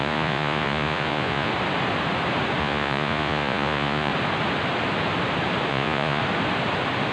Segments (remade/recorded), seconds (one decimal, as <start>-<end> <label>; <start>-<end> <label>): 0.0-1.5 remade; 1.5-2.6 recorded; 2.6-4.1 remade; 4.1-5.7 recorded; 5.7-6.2 remade; 6.2-7.1 recorded